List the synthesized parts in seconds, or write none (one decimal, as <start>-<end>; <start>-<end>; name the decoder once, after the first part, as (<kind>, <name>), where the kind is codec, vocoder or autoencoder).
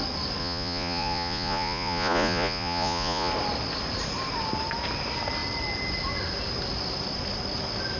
0.4-3.3 (vocoder, Vocos)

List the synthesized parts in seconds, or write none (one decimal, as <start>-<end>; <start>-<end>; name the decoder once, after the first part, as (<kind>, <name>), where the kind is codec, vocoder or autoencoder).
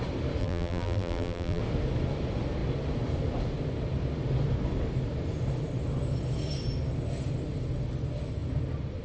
0.4-1.6 (vocoder, BigVGAN v2)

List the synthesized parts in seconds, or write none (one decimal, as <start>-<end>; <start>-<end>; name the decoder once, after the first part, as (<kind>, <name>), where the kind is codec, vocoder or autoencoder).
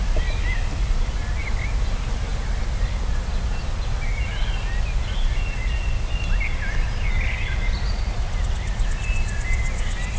none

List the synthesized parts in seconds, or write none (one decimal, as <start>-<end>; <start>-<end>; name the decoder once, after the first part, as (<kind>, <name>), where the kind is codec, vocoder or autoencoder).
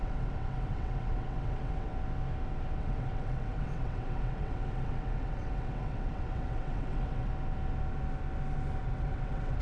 0.0-1.9 (vocoder, WaveNeXt); 2.8-7.3; 8.8-9.6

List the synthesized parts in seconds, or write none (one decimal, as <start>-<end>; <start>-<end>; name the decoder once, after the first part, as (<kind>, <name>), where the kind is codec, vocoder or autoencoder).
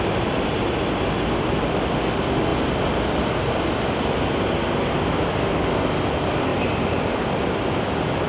6.5-7.2 (vocoder, BigVGAN v2)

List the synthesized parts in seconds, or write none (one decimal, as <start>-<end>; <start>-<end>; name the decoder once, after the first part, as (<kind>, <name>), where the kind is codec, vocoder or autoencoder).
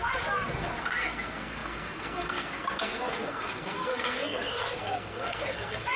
0.0-6.0 (codec, SNAC)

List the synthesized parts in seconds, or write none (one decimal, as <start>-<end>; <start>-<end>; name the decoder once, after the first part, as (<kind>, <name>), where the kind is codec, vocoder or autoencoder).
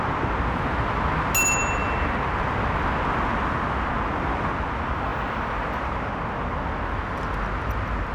none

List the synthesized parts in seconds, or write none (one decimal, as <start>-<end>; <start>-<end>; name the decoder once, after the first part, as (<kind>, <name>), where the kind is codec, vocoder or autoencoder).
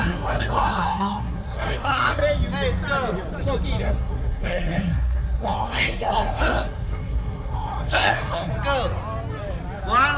0.0-2.2 (codec, SNAC); 3.8-8.5